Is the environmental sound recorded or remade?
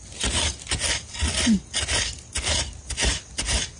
recorded